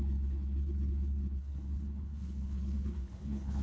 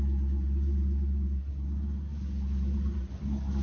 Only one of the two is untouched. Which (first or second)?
second